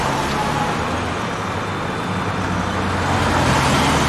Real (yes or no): yes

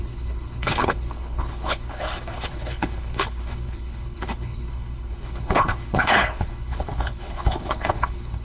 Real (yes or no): no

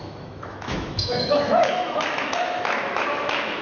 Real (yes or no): no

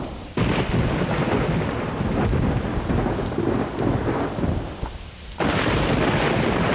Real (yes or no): yes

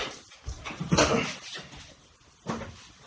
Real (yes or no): yes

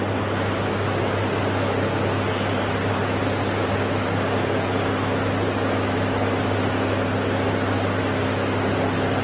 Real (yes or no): yes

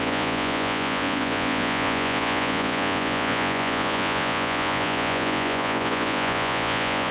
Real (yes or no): no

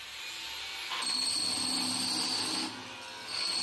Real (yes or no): yes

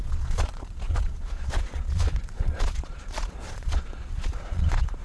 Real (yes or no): no